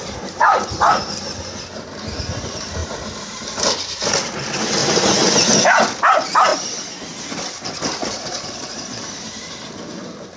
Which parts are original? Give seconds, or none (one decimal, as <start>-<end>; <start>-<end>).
0.0-8.0; 9.0-10.4